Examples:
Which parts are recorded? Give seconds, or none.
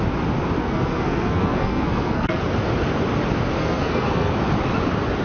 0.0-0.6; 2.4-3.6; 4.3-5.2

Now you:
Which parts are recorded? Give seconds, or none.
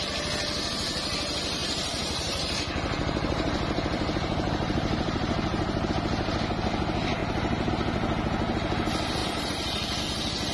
0.0-1.6; 5.9-7.2; 7.7-9.2; 10.0-10.5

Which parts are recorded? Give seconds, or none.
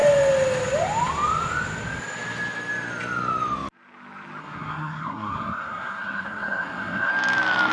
0.0-4.4; 7.1-7.7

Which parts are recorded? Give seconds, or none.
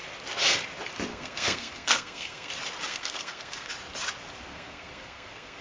0.0-1.1; 2.5-2.9; 3.7-4.5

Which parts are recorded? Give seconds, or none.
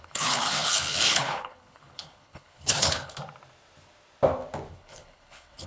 3.2-4.7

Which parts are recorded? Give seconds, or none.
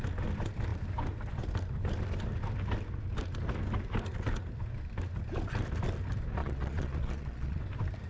0.0-6.4; 7.6-8.1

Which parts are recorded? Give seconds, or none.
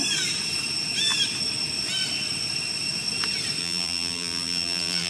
0.0-3.6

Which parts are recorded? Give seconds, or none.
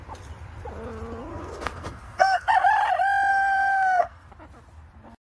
0.0-1.3; 2.5-3.3; 4.3-5.2